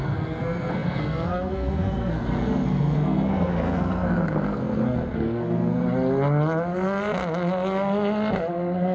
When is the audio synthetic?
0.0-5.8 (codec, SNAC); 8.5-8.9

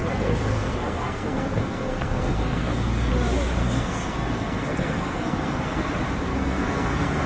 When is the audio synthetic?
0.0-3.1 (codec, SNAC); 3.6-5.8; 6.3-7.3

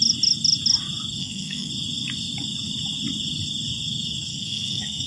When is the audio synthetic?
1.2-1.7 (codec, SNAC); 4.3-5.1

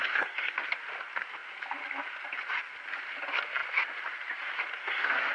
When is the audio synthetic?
0.0-0.6 (codec, SNAC); 4.8-5.3

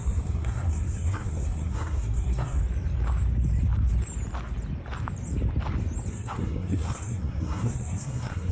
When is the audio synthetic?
0.0-2.6 (codec, SNAC); 6.1-8.5